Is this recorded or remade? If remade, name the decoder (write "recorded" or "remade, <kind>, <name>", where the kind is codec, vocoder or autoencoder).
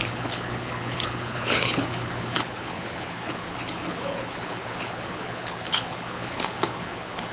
remade, codec, HILCodec